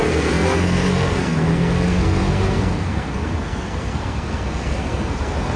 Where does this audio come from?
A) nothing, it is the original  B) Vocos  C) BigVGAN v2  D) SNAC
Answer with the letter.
D